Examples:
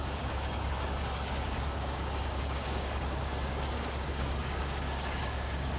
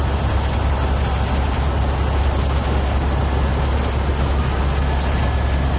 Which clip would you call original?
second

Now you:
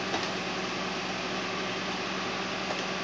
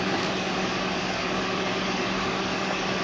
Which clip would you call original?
first